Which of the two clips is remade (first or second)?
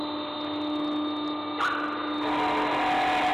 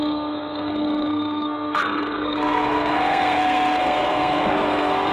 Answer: second